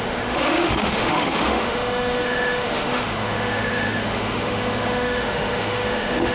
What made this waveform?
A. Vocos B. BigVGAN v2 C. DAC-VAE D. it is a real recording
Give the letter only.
C